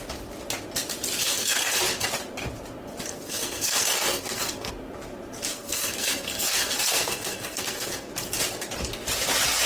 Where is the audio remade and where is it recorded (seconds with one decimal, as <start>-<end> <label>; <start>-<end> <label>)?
0.0-1.2 recorded; 1.2-1.8 remade; 1.8-3.1 recorded; 3.1-4.7 remade; 4.7-5.5 recorded; 5.5-8.1 remade; 8.1-9.7 recorded